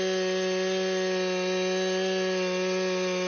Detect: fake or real real